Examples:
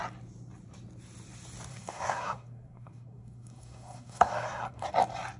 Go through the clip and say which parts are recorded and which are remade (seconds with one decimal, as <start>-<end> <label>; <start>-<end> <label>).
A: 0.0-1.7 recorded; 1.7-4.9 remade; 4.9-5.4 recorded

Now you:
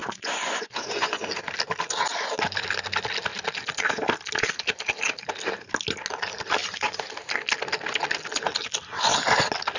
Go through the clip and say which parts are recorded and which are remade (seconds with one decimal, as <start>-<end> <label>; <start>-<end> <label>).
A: 0.0-1.2 remade; 1.2-9.8 recorded

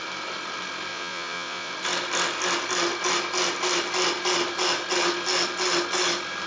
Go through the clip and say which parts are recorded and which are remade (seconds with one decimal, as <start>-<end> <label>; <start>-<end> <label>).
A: 0.0-0.9 recorded; 0.9-1.7 remade; 1.7-6.5 recorded

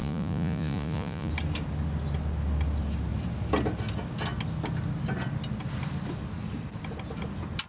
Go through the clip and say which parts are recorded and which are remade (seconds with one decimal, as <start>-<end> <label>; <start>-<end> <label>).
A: 0.0-1.3 remade; 1.3-7.7 recorded

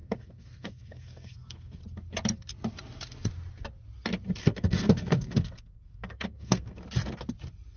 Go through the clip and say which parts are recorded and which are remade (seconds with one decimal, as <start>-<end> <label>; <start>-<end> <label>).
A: 0.0-1.8 remade; 1.8-4.4 recorded; 4.4-6.8 remade; 6.8-7.8 recorded

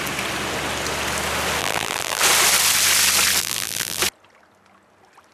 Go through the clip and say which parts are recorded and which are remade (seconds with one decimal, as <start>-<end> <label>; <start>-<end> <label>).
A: 0.0-1.6 recorded; 1.6-2.2 remade; 2.2-3.4 recorded; 3.4-4.0 remade; 4.0-5.3 recorded